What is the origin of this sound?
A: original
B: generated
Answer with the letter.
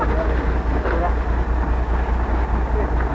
A